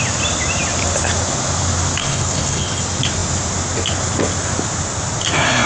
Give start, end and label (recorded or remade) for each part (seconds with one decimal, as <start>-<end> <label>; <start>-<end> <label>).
0.0-2.0 recorded; 2.0-2.8 remade; 2.8-5.7 recorded